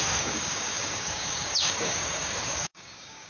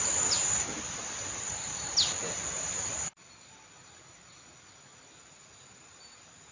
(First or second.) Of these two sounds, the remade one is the first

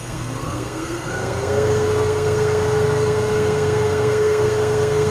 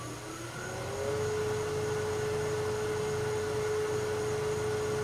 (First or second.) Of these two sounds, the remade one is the first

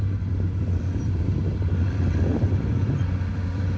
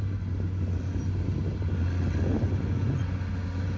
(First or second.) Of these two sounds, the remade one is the first